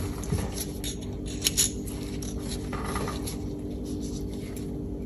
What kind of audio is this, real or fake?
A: real